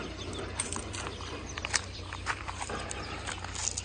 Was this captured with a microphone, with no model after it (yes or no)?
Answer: no